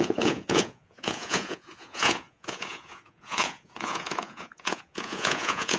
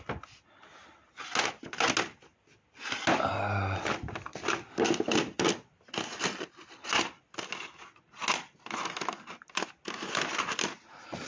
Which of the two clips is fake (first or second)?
first